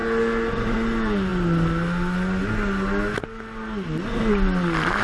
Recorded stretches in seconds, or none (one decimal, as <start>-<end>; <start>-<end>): 0.0-5.0